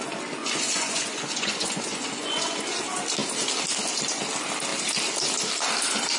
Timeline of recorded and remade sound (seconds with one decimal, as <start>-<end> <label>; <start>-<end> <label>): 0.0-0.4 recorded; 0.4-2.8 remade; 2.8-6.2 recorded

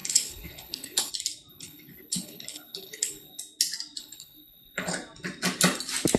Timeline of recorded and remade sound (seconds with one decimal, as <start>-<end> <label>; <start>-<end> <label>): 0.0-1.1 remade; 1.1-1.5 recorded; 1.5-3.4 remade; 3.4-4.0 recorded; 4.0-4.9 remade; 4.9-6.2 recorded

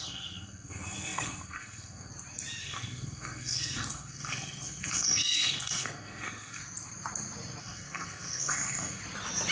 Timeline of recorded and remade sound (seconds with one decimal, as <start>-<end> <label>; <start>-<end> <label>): 0.0-2.1 remade; 2.1-2.6 recorded; 2.6-6.6 remade; 6.6-7.6 recorded; 7.6-9.0 remade; 9.0-9.5 recorded